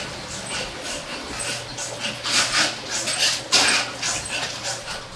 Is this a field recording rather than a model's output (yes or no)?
yes